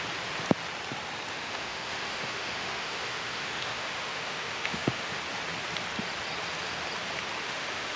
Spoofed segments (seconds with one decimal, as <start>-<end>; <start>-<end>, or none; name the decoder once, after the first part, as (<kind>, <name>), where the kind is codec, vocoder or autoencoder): 1.3-5.2 (autoencoder, DAC-VAE); 7.4-8.0